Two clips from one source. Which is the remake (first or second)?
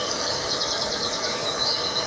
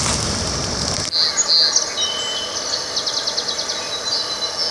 first